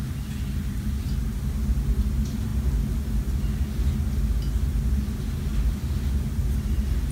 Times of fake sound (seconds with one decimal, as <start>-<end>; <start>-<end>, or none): 5.5-6.4